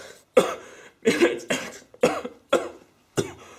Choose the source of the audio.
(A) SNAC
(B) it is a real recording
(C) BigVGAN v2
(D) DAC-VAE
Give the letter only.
B